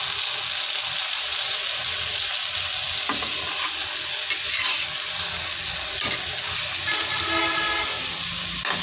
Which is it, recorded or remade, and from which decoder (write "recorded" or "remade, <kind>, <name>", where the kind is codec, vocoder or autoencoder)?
recorded